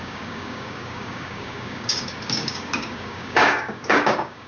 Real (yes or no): no